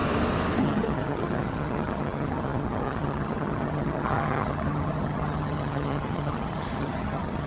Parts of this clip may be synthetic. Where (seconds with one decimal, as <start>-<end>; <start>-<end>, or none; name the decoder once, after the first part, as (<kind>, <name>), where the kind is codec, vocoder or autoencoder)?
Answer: 0.6-7.5 (vocoder, HiFi-GAN)